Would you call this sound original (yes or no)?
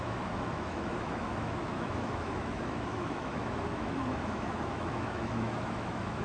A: no